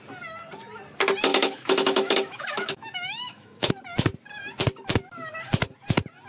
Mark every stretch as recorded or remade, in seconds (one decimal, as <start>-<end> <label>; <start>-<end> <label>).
0.0-1.3 recorded; 1.3-3.7 remade; 3.7-6.3 recorded

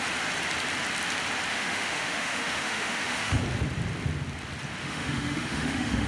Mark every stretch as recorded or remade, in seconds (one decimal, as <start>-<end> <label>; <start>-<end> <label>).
0.0-1.5 recorded; 1.5-3.4 remade; 3.4-4.8 recorded; 4.8-6.1 remade

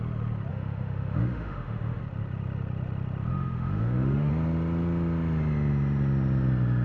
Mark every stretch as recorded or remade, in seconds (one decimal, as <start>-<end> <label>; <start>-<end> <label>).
0.0-0.5 recorded; 0.5-2.0 remade; 2.0-3.3 recorded; 3.3-4.3 remade; 4.3-6.8 recorded

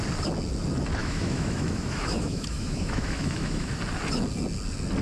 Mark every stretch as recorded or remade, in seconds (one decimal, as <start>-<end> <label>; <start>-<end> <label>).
0.0-1.0 recorded; 1.0-3.8 remade; 3.8-5.0 recorded

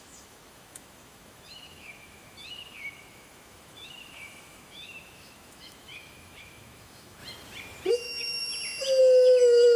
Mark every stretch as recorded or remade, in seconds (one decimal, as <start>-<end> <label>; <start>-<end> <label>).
0.0-7.2 remade; 7.2-7.9 recorded; 7.9-8.5 remade; 8.5-9.0 recorded; 9.0-9.8 remade

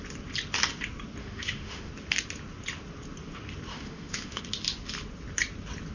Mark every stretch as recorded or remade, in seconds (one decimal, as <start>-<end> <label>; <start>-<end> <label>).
0.0-1.2 recorded; 1.2-1.9 remade; 1.9-3.7 recorded; 3.7-4.4 remade; 4.4-5.9 recorded

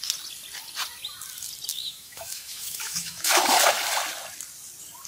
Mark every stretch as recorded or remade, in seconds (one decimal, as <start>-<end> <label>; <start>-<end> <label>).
0.0-1.7 recorded; 1.7-3.4 remade; 3.4-5.1 recorded

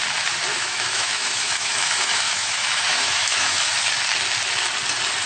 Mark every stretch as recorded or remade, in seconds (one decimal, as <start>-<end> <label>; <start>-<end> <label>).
0.0-0.5 recorded; 0.5-3.7 remade; 3.7-5.3 recorded